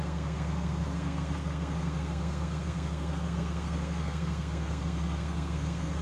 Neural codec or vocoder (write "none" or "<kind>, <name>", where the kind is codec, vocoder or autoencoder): codec, SNAC